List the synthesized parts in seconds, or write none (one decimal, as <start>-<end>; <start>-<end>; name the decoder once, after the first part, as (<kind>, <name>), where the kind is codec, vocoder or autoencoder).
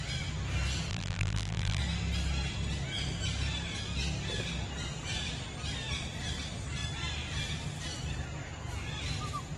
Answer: 0.9-1.8 (vocoder, BigVGAN v2)